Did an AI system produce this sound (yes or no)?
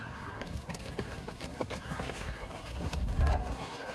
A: yes